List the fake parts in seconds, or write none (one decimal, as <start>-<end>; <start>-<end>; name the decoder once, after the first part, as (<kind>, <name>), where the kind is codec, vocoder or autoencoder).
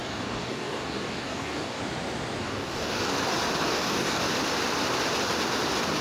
0.0-1.8 (codec, DAC); 2.4-3.1; 3.7-4.2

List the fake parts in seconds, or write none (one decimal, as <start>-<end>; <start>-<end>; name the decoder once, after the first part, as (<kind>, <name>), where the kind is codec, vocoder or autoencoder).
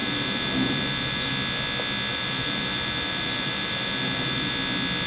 0.0-1.3 (vocoder, BigVGAN v2); 2.1-4.5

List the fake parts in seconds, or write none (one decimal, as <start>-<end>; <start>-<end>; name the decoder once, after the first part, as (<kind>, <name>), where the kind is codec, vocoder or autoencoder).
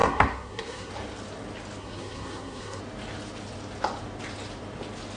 0.0-0.9 (codec, SNAC); 1.8-2.8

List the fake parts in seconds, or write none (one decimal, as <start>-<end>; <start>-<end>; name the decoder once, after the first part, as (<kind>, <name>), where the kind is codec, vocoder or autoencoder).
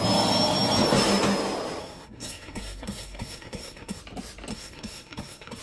1.8-4.0 (codec, SNAC); 4.5-5.6